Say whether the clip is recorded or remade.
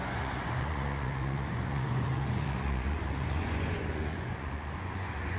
remade